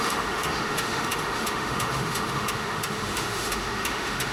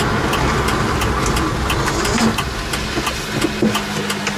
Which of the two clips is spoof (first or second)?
first